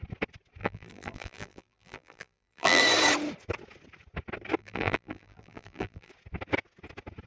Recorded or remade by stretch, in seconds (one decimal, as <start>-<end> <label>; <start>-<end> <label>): 0.0-0.6 recorded; 0.6-2.8 remade; 2.8-4.6 recorded; 4.6-6.1 remade; 6.1-7.3 recorded